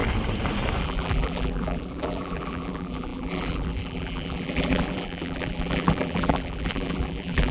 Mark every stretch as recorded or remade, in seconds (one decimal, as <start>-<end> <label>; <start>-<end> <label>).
0.0-0.8 recorded; 0.8-7.5 remade